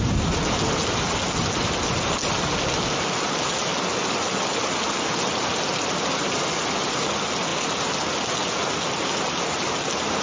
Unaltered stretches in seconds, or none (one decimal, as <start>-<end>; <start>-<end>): 0.0-10.2